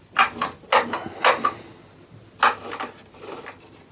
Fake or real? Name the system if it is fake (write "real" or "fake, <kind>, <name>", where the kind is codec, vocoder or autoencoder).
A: real